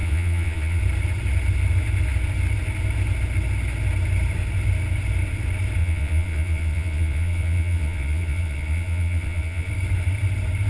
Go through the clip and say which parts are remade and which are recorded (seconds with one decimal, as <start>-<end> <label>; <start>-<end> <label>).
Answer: 0.0-0.8 remade; 0.8-5.8 recorded; 5.8-9.7 remade; 9.7-10.7 recorded